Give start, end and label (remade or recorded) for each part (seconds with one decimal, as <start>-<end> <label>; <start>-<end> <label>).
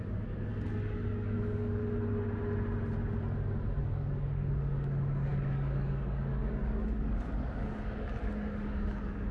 0.0-0.5 remade; 0.5-1.1 recorded; 1.1-1.8 remade; 1.8-3.8 recorded; 3.8-9.3 remade